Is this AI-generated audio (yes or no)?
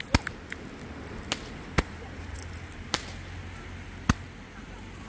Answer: no